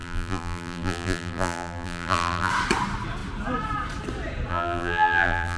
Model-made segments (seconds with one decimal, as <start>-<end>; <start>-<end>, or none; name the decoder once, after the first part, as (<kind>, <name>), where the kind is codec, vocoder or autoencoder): 0.0-2.5 (vocoder, BigVGAN v2); 4.5-5.6